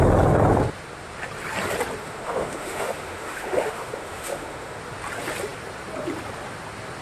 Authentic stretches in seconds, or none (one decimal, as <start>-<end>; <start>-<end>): 0.0-2.0; 4.8-7.0